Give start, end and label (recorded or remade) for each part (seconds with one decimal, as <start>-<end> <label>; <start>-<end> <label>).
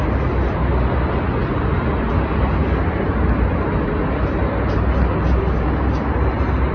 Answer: 0.0-6.7 recorded